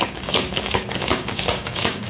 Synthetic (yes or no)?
yes